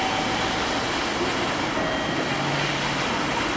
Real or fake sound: real